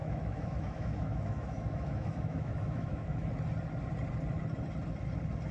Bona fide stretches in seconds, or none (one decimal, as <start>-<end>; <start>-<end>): 3.3-5.5